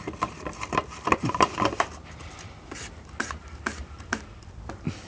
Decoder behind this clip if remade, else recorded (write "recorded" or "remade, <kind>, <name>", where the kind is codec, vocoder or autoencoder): remade, vocoder, BigVGAN v2